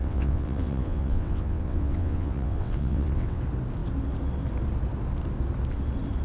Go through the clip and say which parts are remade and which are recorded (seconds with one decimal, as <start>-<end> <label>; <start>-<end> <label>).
0.0-3.4 remade; 3.4-6.2 recorded